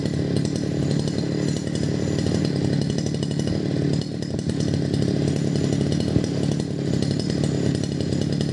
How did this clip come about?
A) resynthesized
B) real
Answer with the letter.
B